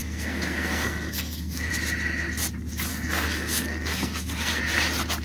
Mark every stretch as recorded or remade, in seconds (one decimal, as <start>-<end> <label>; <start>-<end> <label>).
0.0-1.7 remade; 1.7-2.9 recorded; 2.9-4.6 remade; 4.6-5.2 recorded